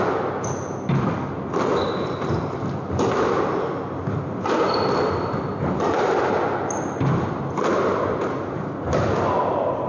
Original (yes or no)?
yes